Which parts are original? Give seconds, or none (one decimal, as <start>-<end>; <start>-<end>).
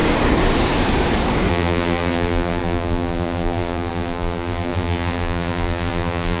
0.0-1.5